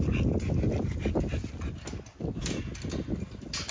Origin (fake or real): real